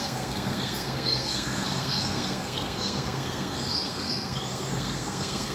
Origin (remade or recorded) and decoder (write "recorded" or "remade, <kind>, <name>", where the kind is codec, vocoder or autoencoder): remade, codec, SNAC